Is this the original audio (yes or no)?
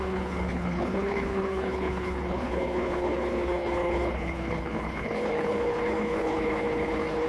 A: no